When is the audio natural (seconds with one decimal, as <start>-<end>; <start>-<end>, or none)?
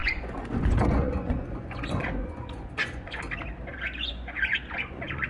3.2-3.7